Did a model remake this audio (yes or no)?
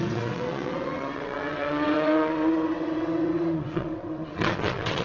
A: yes